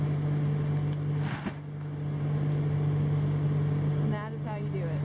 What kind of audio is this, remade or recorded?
recorded